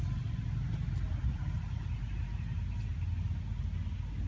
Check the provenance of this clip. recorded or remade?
recorded